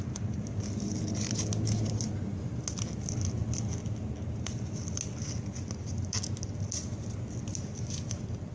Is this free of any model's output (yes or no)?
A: yes